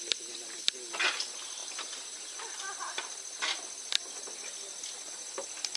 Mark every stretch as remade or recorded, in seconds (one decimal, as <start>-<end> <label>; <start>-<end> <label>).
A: 0.0-5.8 recorded